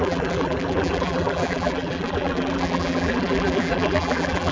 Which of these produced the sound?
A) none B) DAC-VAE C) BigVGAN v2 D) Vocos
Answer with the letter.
C